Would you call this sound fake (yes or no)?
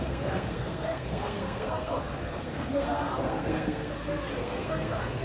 yes